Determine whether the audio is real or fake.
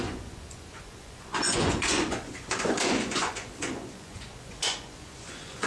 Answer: fake